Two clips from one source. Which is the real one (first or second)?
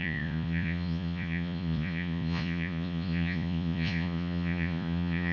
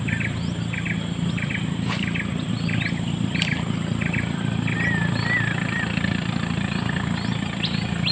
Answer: second